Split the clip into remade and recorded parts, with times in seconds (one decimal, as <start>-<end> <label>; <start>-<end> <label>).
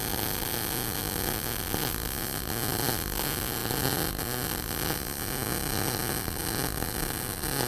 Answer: 0.0-7.7 recorded